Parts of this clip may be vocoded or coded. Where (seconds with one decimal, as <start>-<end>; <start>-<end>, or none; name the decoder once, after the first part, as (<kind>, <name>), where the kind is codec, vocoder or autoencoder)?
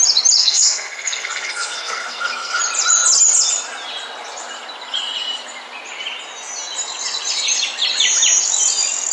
0.4-2.6 (codec, SNAC)